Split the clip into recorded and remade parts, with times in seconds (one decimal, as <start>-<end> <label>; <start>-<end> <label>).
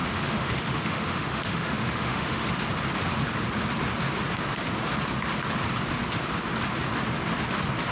0.0-2.5 remade; 2.5-7.9 recorded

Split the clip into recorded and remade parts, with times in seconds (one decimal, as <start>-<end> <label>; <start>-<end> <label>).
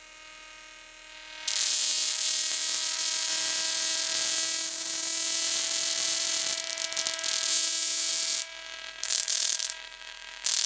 0.0-9.0 recorded; 9.0-10.7 remade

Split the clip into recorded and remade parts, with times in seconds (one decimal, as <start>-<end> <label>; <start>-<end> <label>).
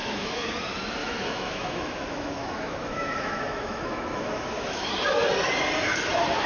0.0-0.5 remade; 0.5-1.0 recorded; 1.0-4.9 remade; 4.9-6.5 recorded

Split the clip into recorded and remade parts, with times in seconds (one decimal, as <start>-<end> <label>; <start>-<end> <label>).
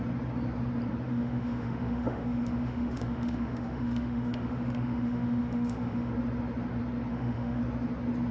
0.0-1.1 recorded; 1.1-6.1 remade; 6.1-7.1 recorded; 7.1-7.6 remade; 7.6-8.3 recorded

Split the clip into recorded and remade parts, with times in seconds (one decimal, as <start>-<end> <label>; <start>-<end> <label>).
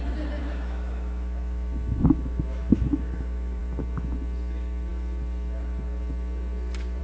0.0-0.4 recorded; 0.4-3.6 remade; 3.6-7.0 recorded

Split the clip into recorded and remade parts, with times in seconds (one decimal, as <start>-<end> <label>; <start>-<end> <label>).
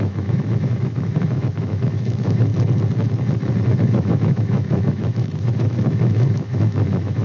0.0-2.5 remade; 2.5-3.8 recorded; 3.8-7.2 remade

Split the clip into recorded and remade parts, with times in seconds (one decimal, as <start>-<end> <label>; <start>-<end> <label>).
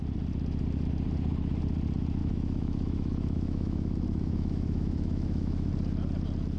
0.0-2.2 recorded; 2.2-5.7 remade; 5.7-6.6 recorded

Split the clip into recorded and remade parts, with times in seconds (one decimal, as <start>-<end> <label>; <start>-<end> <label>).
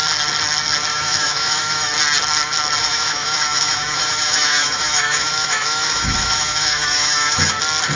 0.0-0.9 recorded; 0.9-1.9 remade; 1.9-2.8 recorded; 2.8-7.6 remade; 7.6-8.0 recorded